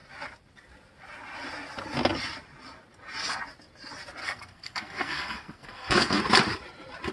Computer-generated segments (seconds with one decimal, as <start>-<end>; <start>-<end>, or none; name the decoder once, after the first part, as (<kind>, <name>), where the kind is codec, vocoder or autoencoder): 4.2-6.2 (codec, SNAC)